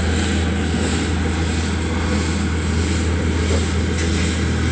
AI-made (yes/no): no